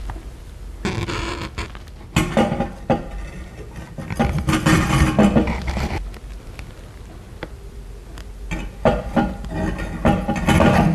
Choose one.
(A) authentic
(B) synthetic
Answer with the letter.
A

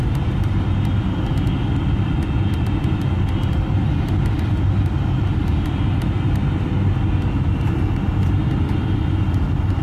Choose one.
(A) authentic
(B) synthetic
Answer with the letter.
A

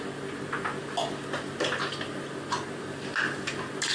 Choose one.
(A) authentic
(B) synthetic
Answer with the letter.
A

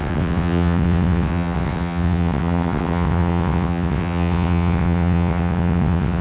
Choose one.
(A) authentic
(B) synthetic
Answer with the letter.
B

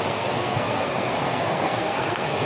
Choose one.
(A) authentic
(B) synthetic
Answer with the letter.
B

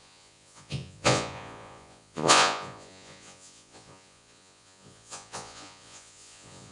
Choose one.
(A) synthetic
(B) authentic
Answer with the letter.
A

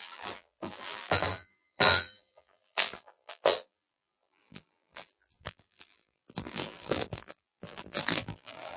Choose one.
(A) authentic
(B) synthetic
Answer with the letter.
B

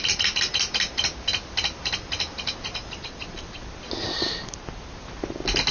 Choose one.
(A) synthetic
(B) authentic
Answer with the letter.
B